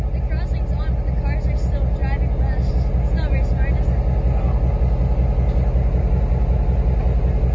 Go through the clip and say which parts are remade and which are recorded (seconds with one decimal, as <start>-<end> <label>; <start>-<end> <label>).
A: 0.0-7.5 recorded